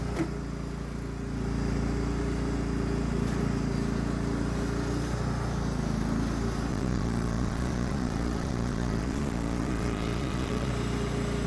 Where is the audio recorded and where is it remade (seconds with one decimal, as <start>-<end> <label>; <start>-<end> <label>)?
0.0-6.7 recorded; 6.7-10.7 remade; 10.7-11.5 recorded